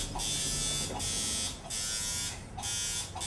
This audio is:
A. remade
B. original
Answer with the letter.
B